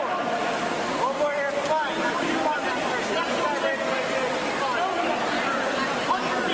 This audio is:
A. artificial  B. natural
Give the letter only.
B